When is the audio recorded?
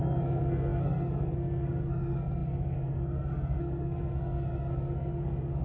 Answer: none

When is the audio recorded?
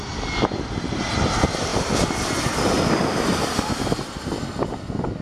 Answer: 0.0-1.7; 4.8-5.2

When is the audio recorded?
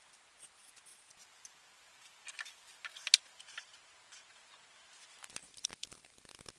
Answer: 0.0-6.6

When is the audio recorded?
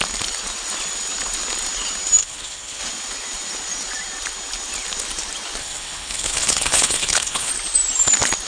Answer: 0.0-2.2; 2.8-5.6; 7.5-8.5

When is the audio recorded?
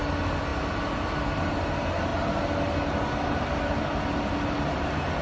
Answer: 0.0-5.2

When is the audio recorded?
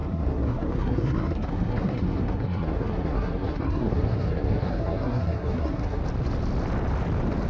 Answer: 6.0-7.5